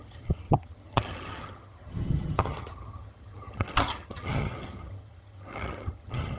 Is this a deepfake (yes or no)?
yes